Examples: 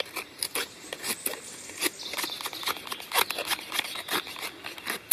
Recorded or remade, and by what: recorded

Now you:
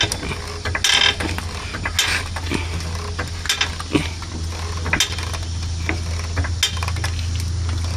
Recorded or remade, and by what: recorded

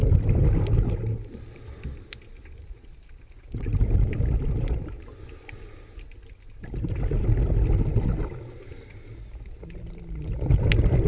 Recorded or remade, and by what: recorded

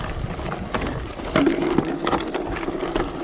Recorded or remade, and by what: recorded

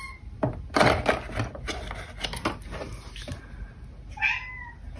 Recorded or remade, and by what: recorded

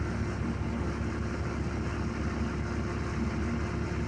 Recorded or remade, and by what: recorded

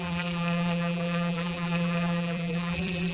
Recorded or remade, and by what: remade, vocoder, BigVGAN v2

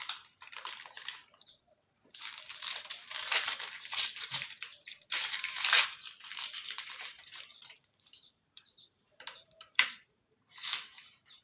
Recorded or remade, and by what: remade, vocoder, BigVGAN v2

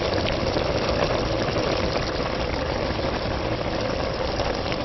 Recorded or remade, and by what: remade, vocoder, BigVGAN v2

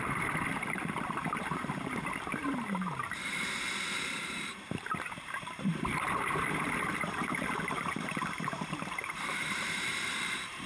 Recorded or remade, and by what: remade, vocoder, BigVGAN v2